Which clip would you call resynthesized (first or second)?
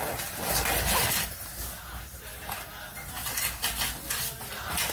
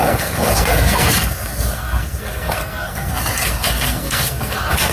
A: second